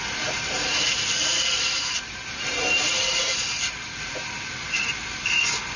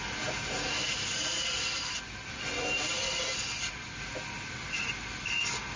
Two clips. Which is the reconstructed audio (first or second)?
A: first